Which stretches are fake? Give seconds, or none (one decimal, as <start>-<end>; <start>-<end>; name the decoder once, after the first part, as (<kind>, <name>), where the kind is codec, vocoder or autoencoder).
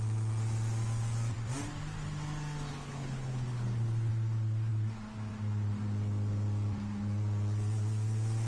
2.7-4.1 (codec, HILCodec)